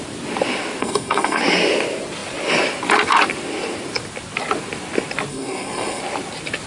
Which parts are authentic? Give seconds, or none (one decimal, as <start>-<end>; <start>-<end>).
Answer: 0.0-0.8; 1.4-5.3; 6.0-6.7